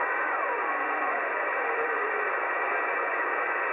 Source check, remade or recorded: remade